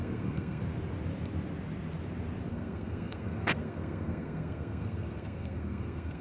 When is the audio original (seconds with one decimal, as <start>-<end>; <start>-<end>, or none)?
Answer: 0.6-2.5